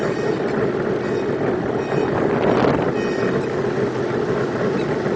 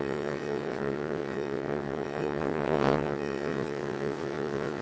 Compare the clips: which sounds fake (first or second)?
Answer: second